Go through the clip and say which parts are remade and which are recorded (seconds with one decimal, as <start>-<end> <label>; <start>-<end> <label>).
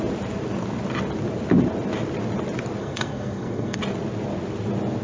0.0-2.8 recorded; 2.8-3.8 remade; 3.8-5.0 recorded